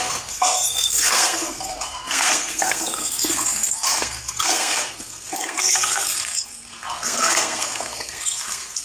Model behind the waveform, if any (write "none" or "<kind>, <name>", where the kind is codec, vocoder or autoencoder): codec, SNAC